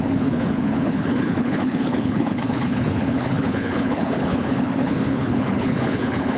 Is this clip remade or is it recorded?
remade